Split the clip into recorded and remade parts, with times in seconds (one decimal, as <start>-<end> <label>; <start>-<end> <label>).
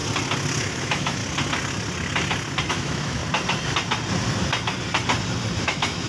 0.0-0.6 recorded; 0.6-1.2 remade; 1.2-2.7 recorded; 2.7-3.2 remade; 3.2-5.6 recorded; 5.6-6.1 remade